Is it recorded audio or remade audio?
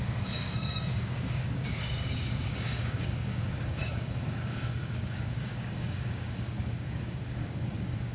remade